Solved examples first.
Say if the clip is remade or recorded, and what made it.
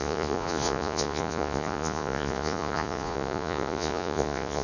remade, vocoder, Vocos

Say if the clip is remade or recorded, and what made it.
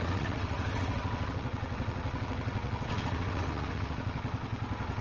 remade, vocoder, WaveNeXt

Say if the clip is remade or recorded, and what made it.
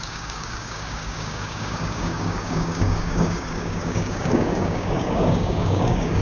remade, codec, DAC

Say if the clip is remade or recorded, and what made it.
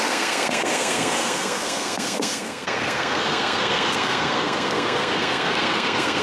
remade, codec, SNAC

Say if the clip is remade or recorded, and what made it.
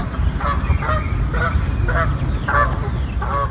recorded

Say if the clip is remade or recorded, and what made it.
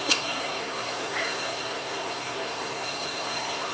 remade, codec, SNAC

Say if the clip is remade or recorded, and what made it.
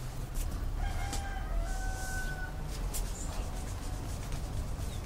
recorded